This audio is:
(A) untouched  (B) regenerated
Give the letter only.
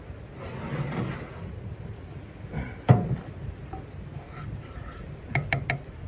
A